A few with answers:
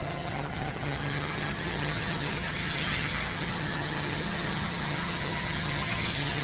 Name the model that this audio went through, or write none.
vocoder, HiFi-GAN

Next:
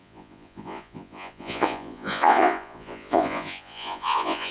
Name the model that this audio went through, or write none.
vocoder, Vocos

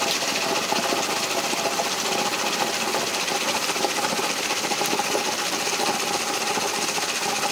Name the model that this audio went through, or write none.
none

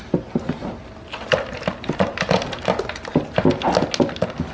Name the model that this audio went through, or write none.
none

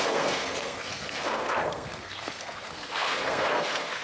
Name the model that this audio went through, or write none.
codec, SNAC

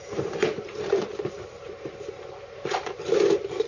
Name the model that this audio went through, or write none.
vocoder, BigVGAN v2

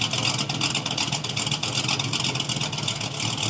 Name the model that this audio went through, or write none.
none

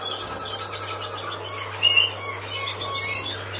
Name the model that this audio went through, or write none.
none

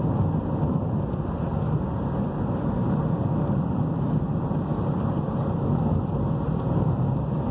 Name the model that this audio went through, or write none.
none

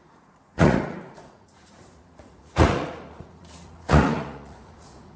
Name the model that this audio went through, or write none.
vocoder, Vocos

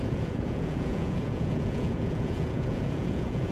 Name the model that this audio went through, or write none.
vocoder, Vocos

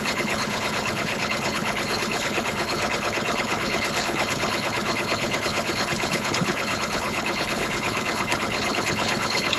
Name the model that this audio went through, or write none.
codec, HILCodec